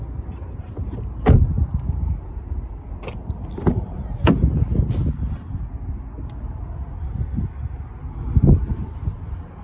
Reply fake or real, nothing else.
real